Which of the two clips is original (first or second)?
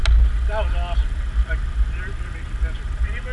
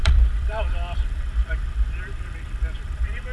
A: first